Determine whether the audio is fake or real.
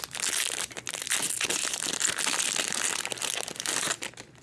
real